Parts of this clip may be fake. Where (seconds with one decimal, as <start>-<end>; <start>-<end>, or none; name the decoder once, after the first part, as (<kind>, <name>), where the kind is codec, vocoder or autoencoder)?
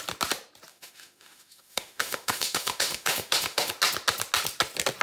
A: 0.7-3.7 (autoencoder, DAC-VAE)